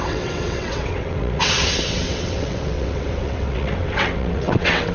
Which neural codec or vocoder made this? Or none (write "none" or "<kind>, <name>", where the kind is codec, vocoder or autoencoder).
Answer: vocoder, WaveNeXt